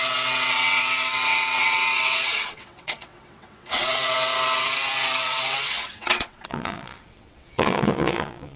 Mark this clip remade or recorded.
remade